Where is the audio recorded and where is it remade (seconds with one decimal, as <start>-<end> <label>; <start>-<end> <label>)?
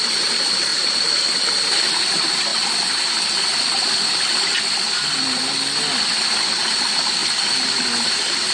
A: 0.0-0.7 remade; 0.7-1.9 recorded; 1.9-2.5 remade; 2.5-6.8 recorded; 6.8-7.2 remade; 7.2-8.1 recorded; 8.1-8.5 remade